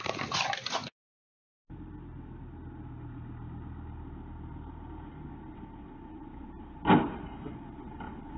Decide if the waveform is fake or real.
real